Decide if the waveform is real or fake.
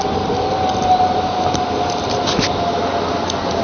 real